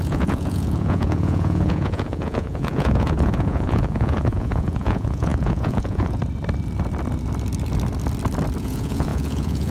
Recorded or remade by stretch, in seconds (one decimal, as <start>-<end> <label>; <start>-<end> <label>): 0.0-6.2 remade; 6.2-8.6 recorded; 8.6-9.7 remade